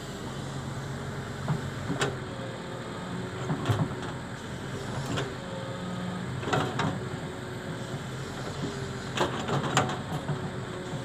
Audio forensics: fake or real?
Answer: real